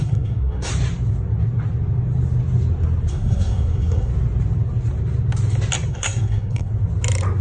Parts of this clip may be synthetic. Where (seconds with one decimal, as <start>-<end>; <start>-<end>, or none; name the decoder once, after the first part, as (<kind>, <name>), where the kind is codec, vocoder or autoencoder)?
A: 0.0-0.7 (codec, SNAC); 3.1-4.1; 5.9-6.7